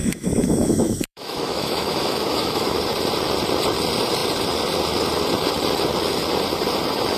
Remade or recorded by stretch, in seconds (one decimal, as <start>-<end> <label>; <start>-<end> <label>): 0.0-2.8 remade; 2.8-7.2 recorded